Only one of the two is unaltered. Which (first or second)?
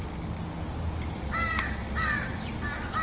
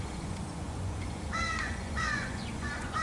first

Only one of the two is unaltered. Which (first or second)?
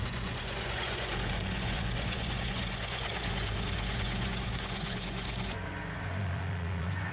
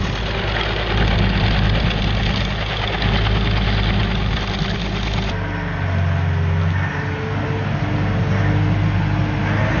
second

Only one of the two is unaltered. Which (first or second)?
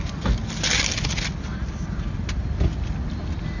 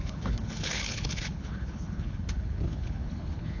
first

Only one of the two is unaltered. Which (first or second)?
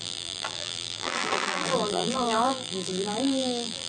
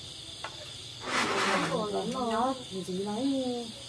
second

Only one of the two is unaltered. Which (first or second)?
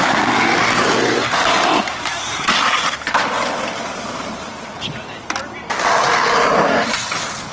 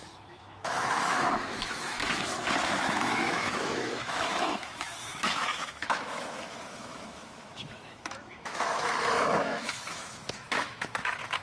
first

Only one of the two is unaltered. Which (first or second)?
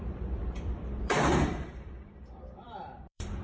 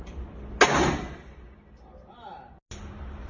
second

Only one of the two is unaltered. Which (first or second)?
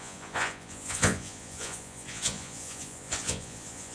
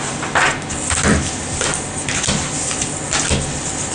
second